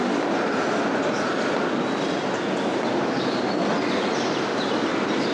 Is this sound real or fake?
real